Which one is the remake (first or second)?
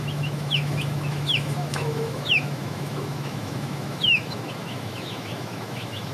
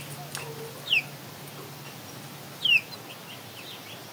first